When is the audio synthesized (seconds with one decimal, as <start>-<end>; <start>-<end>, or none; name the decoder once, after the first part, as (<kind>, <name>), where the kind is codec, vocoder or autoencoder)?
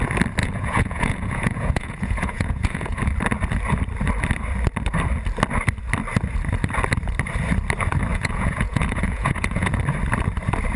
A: 0.4-3.0 (vocoder, Vocos); 8.1-9.8